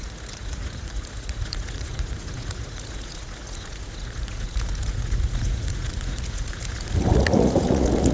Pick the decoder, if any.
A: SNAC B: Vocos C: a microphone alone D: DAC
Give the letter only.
B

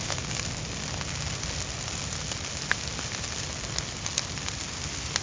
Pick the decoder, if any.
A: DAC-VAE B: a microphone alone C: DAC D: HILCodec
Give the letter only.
B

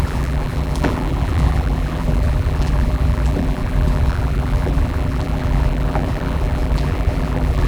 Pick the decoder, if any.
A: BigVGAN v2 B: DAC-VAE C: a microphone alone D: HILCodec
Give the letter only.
A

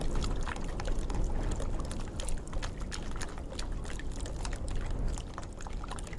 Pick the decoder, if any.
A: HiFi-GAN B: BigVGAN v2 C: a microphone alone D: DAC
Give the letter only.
C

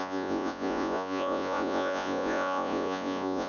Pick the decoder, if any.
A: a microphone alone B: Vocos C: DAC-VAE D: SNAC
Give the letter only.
B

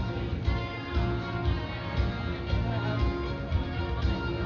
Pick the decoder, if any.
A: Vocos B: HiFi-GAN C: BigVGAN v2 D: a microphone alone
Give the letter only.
D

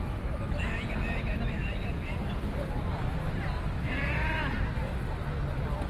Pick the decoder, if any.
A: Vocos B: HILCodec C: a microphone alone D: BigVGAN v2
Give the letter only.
C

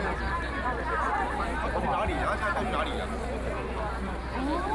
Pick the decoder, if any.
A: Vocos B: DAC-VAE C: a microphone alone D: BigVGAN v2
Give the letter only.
C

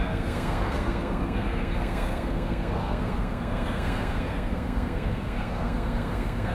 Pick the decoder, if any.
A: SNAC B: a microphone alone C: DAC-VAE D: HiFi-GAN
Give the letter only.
A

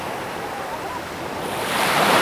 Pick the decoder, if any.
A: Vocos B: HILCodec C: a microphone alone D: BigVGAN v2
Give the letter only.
D